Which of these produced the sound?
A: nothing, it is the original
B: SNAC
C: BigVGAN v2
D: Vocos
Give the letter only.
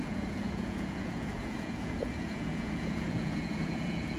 D